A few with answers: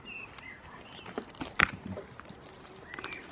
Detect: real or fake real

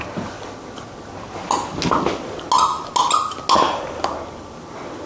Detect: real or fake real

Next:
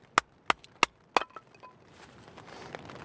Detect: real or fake real